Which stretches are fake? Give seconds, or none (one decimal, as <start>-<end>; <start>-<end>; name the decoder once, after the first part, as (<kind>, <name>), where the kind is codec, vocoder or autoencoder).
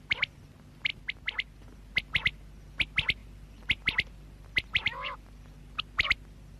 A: 3.2-5.6 (vocoder, BigVGAN v2)